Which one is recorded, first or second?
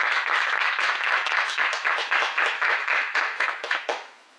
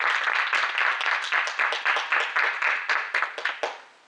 second